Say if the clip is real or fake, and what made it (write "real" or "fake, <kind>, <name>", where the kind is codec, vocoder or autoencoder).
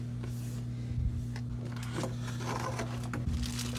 real